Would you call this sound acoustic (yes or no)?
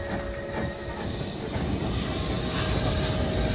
yes